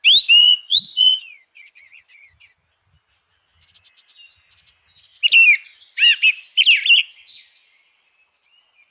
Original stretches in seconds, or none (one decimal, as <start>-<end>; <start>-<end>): 0.0-0.4; 2.0-8.9

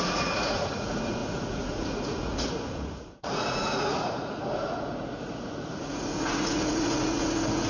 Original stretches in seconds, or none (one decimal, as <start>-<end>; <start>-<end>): none

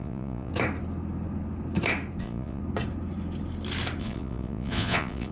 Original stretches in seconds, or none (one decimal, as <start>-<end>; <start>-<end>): 0.5-2.2; 2.6-4.0